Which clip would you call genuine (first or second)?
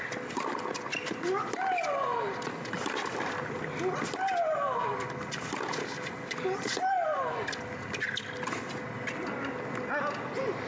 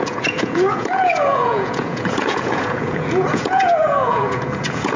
first